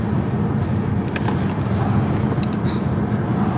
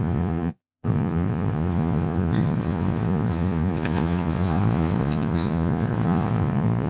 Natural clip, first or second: first